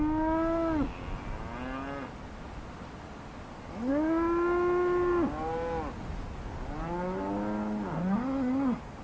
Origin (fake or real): real